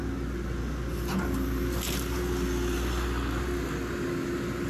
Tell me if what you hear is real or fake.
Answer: real